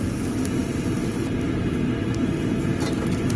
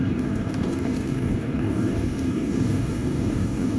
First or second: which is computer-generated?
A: second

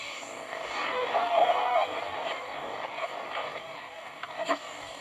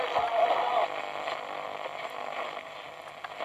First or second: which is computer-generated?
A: first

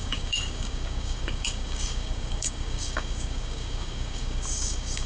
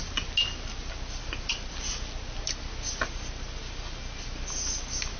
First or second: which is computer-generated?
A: first